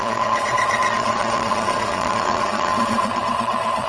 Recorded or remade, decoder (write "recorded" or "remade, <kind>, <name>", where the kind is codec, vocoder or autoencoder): remade, vocoder, Vocos